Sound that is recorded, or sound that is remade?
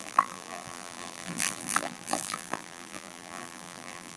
remade